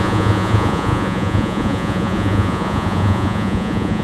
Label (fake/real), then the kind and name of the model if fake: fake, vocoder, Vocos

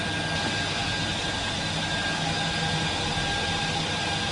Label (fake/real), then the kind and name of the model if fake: real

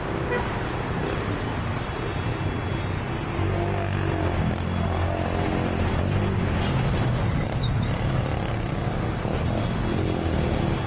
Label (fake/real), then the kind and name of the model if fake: real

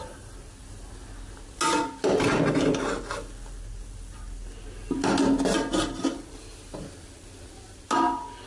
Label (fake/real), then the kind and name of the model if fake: real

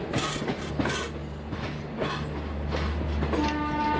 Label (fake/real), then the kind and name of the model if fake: real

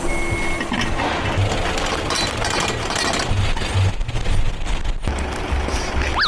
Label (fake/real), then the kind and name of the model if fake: real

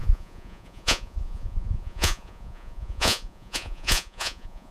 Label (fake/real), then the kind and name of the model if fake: fake, vocoder, Vocos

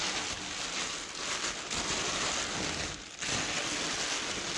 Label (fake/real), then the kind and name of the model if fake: real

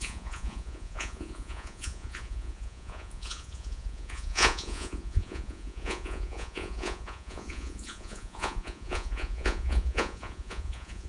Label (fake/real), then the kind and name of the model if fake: fake, vocoder, Vocos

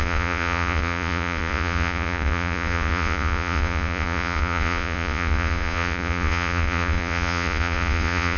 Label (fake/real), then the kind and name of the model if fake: fake, vocoder, Vocos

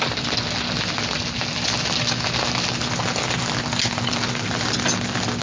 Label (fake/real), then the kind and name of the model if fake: real